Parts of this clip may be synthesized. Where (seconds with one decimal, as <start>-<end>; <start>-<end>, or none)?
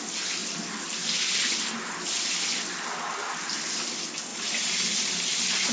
4.3-5.1